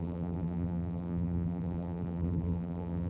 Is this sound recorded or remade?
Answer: remade